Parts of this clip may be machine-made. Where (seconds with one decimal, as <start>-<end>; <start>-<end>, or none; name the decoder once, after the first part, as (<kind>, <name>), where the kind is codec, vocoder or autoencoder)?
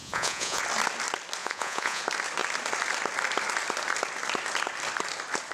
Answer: 0.0-0.6 (vocoder, Vocos); 1.4-2.0